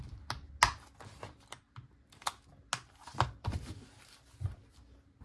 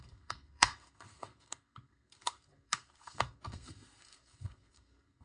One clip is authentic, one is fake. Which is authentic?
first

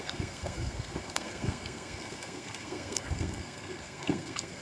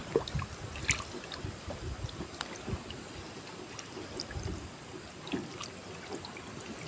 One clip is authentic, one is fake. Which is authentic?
second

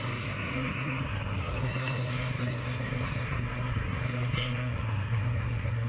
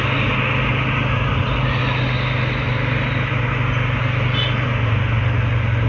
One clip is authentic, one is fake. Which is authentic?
second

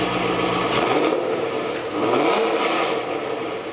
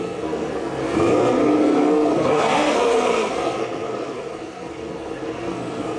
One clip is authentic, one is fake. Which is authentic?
first